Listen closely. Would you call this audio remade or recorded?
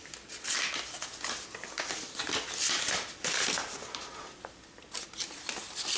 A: recorded